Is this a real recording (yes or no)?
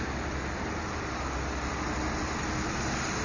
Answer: yes